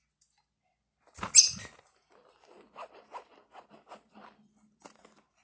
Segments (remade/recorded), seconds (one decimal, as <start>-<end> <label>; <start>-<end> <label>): 0.0-5.4 recorded